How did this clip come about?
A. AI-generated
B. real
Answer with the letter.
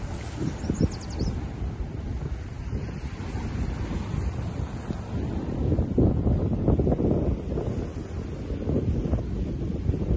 B